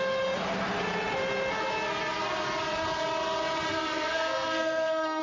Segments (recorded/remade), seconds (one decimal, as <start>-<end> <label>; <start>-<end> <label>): 0.0-3.7 recorded; 3.7-5.2 remade